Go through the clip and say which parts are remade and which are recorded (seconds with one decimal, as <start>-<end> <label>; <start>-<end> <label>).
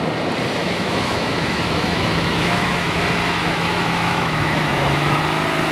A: 0.0-0.6 recorded; 0.6-3.0 remade; 3.0-3.4 recorded; 3.4-5.2 remade; 5.2-5.7 recorded